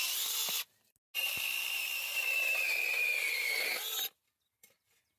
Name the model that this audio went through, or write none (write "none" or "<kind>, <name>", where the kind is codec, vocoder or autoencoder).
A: none